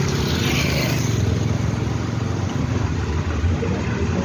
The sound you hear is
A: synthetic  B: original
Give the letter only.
B